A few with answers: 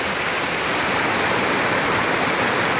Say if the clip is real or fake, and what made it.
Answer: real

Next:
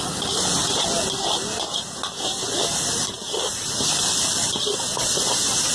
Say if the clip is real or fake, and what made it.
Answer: real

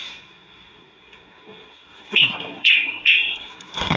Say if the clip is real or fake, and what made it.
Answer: fake, codec, SNAC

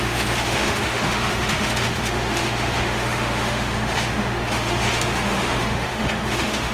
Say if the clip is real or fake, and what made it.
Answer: fake, autoencoder, DAC-VAE